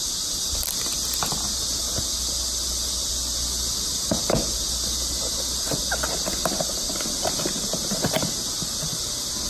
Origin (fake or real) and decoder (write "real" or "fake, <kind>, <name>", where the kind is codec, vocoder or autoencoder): real